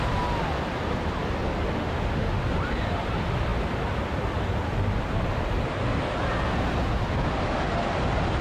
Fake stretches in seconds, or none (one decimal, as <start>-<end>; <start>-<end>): 1.8-2.4